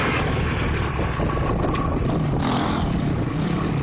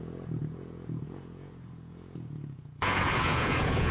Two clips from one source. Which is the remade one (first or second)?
second